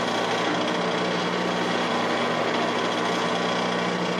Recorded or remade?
recorded